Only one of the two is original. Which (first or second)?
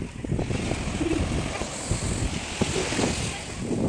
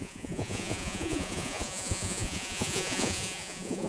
first